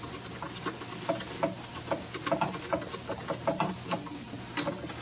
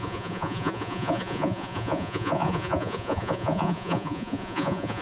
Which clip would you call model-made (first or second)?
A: second